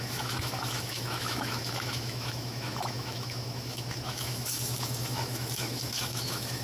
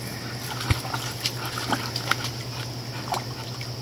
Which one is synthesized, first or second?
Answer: first